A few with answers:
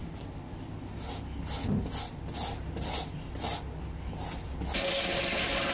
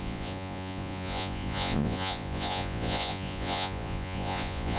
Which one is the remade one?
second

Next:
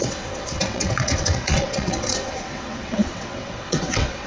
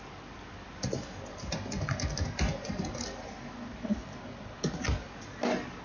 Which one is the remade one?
first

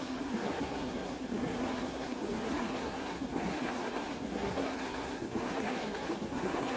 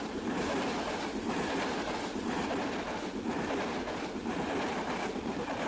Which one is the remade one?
first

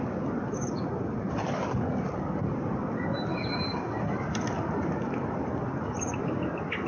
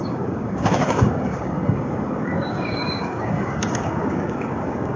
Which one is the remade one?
second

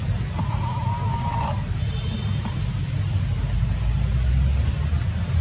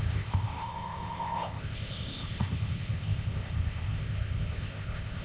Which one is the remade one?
second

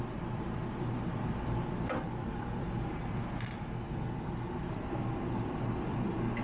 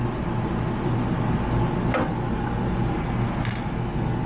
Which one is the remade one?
first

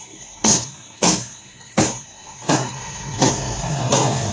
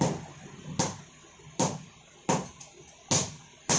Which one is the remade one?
first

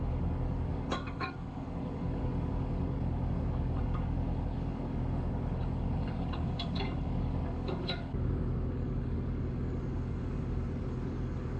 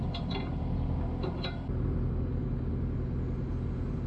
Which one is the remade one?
first